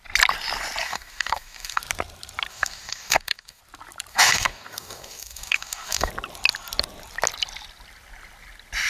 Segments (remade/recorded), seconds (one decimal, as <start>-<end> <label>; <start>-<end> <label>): 0.0-0.8 recorded; 0.8-1.8 remade; 1.8-2.5 recorded; 2.5-3.6 remade; 3.6-4.1 recorded; 4.1-6.1 remade; 6.1-8.9 recorded